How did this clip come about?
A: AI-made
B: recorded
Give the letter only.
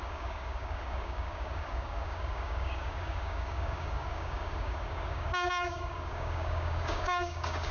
A